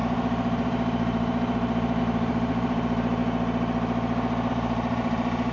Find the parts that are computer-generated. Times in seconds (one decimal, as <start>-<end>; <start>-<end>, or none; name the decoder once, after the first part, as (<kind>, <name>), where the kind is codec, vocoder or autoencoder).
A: 0.0-3.2 (vocoder, BigVGAN v2); 4.5-5.5